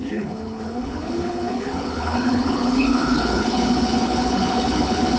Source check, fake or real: fake